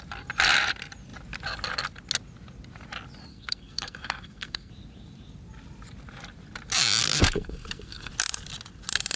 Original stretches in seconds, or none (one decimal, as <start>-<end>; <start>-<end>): 0.0-3.3; 4.7-7.0; 8.1-9.2